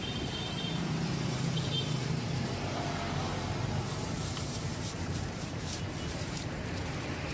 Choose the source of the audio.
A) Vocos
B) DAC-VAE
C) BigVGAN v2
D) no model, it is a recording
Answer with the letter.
C